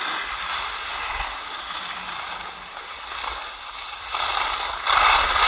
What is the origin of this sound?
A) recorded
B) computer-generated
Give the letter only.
A